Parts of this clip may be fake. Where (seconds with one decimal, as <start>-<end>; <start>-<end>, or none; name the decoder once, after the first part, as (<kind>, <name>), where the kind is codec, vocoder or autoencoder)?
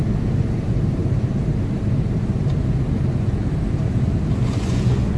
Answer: 4.4-5.2 (vocoder, Vocos)